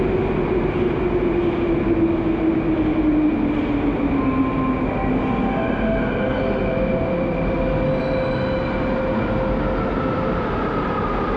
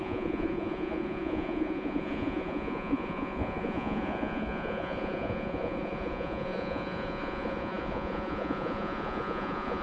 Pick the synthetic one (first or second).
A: second